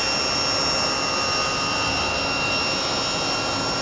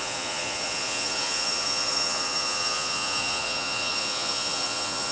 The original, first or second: first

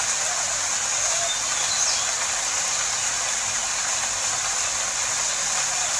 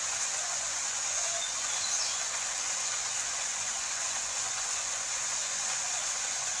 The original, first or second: first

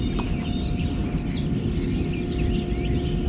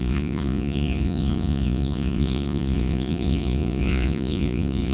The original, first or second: first